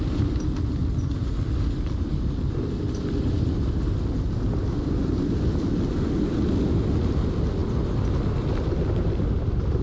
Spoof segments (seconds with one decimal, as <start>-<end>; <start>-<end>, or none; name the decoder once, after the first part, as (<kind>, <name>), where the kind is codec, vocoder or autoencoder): none